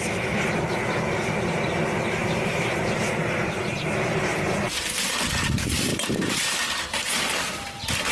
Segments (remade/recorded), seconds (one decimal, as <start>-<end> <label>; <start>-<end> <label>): 0.0-2.2 recorded; 2.2-5.0 remade; 5.0-5.9 recorded; 5.9-7.1 remade; 7.1-8.1 recorded